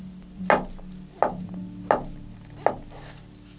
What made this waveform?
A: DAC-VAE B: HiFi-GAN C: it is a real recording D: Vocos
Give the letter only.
C